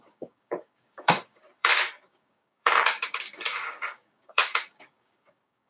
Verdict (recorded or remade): remade